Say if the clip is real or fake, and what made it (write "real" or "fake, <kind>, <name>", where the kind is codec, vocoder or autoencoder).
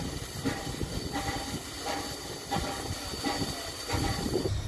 real